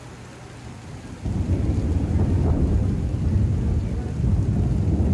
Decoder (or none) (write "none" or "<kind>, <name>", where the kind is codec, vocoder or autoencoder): none